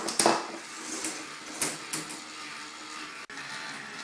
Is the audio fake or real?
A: real